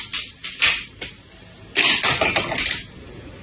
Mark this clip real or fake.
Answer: real